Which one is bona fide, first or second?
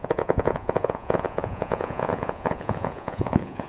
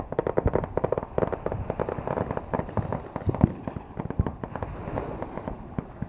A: second